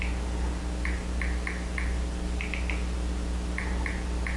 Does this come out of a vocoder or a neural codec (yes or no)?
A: no